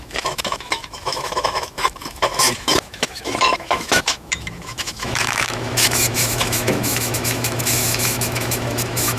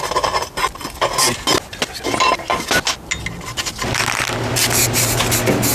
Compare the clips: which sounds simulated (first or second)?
first